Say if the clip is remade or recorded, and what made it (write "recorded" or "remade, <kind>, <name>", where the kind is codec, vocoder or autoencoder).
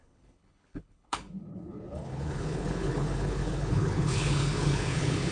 remade, codec, HILCodec